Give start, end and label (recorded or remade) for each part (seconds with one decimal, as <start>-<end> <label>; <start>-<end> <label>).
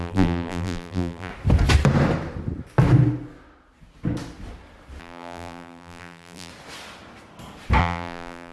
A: 0.0-1.3 remade; 1.3-5.0 recorded; 5.0-6.5 remade; 6.5-7.8 recorded; 7.8-8.5 remade